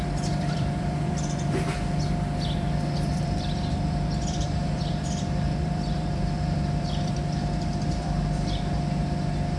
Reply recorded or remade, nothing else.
remade